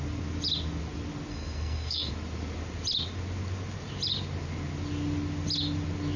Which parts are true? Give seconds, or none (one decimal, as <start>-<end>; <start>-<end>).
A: 0.0-1.3; 2.1-6.2